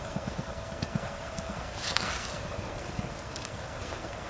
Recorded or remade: remade